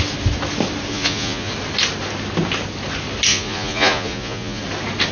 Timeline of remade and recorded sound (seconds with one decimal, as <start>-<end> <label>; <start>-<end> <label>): 0.0-0.9 recorded; 0.9-1.5 remade; 1.5-3.3 recorded; 3.3-4.6 remade; 4.6-5.1 recorded

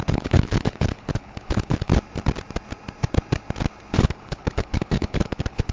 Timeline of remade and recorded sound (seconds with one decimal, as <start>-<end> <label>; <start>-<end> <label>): 0.0-1.9 remade; 1.9-4.0 recorded; 4.0-5.7 remade